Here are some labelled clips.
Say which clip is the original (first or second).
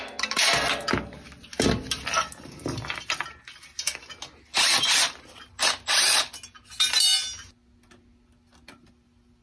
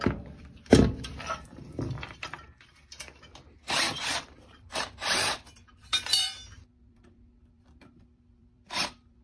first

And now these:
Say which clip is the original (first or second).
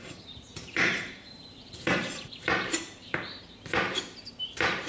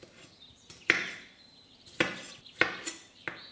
second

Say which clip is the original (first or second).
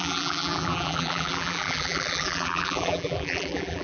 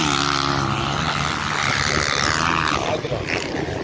second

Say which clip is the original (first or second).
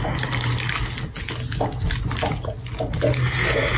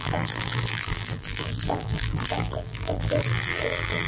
first